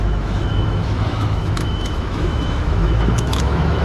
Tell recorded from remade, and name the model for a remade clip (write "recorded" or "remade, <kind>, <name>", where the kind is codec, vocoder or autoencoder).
remade, autoencoder, DAC-VAE